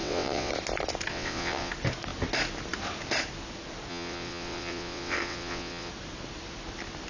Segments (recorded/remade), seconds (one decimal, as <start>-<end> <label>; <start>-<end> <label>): 0.0-0.5 remade; 0.5-1.1 recorded; 1.1-1.7 remade; 1.7-3.9 recorded; 3.9-5.9 remade; 5.9-7.1 recorded